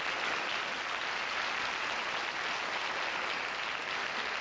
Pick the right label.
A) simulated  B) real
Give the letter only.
B